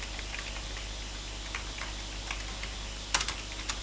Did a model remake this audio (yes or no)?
no